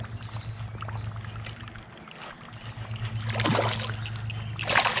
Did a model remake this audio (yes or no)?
no